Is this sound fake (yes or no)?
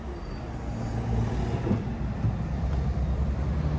no